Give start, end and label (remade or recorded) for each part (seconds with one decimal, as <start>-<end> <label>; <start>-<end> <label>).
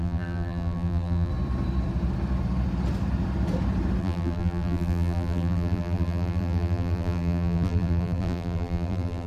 0.0-1.3 remade; 1.3-4.0 recorded; 4.0-9.3 remade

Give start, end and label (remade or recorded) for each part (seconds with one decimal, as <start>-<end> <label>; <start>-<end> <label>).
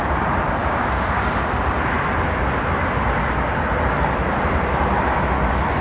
0.0-0.6 recorded; 0.6-1.3 remade; 1.3-5.8 recorded